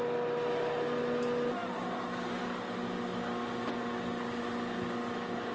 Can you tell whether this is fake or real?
real